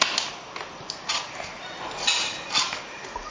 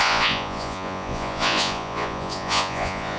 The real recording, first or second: first